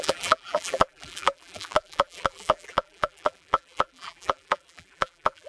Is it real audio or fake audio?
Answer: fake